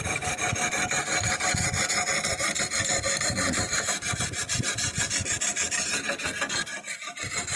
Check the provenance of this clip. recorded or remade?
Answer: remade